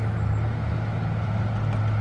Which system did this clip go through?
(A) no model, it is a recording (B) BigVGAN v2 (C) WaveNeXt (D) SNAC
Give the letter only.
A